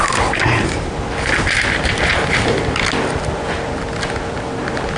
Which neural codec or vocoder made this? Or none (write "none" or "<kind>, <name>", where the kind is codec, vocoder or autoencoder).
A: none